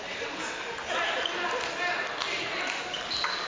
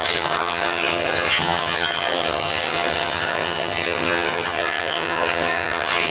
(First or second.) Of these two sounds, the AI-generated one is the second